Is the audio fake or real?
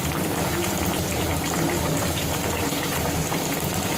fake